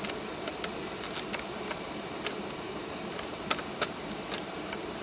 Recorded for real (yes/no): yes